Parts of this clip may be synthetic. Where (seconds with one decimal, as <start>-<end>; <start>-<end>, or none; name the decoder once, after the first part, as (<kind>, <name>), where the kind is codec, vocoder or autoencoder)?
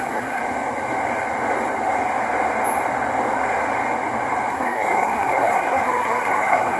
0.0-0.4 (codec, SNAC); 4.5-6.8